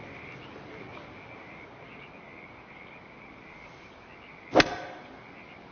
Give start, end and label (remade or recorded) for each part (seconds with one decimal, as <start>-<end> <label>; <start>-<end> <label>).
0.0-5.7 recorded